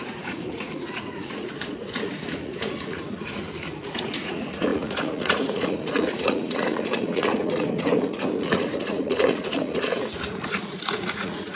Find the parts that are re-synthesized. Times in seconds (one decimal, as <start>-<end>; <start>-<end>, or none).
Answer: 0.0-11.6